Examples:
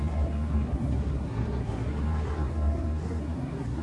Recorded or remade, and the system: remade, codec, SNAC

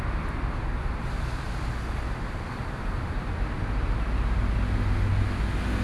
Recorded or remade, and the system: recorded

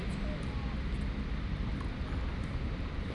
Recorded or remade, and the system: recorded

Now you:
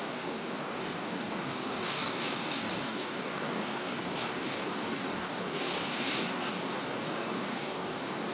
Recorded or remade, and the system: remade, codec, DAC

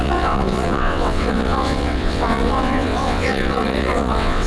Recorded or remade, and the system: remade, vocoder, WaveNeXt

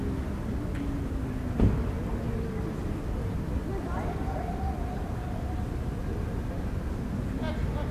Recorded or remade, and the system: recorded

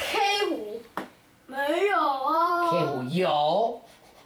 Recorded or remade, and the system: remade, vocoder, BigVGAN v2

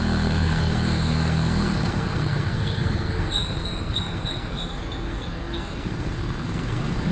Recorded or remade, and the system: remade, codec, SNAC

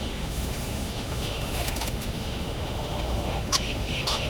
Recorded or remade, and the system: remade, autoencoder, DAC-VAE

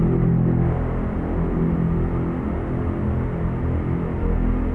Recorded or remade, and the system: recorded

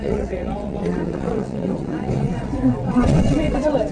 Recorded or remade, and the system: remade, vocoder, WaveNeXt